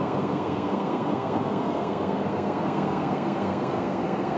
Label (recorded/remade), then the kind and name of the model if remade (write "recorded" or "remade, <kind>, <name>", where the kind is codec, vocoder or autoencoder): remade, codec, SNAC